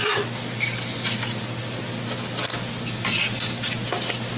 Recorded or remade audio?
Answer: recorded